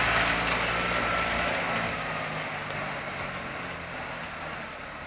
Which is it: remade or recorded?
recorded